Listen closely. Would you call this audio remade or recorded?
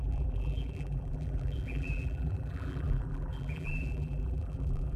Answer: remade